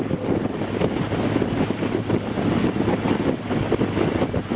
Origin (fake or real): real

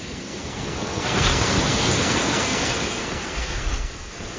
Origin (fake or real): fake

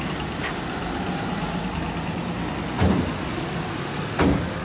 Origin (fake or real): real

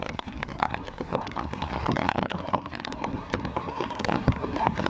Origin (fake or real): fake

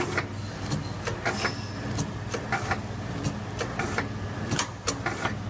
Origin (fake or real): real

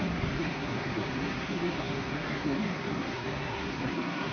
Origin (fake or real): fake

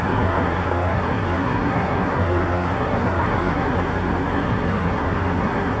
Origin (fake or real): fake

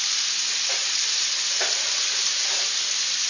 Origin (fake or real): real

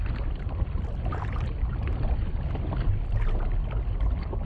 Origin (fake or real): real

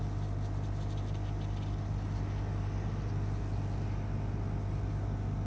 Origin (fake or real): real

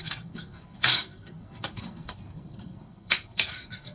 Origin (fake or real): fake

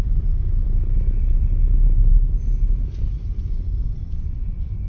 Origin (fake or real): real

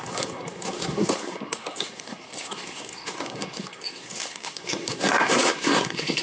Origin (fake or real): fake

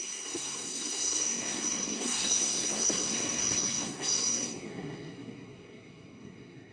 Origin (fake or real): fake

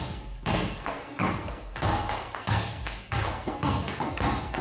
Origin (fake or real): fake